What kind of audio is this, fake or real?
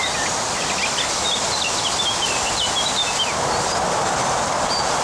real